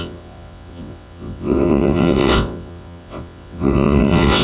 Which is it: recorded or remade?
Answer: remade